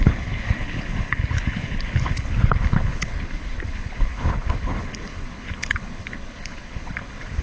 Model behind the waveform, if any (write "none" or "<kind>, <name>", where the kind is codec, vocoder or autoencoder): codec, HILCodec